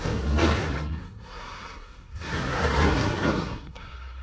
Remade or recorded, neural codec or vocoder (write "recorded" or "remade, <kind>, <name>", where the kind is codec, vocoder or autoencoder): remade, codec, SNAC